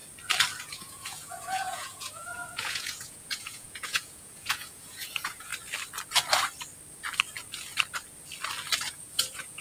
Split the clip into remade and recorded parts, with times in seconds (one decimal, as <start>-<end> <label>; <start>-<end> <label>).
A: 0.0-0.6 recorded; 0.6-5.5 remade; 5.5-8.9 recorded; 8.9-9.6 remade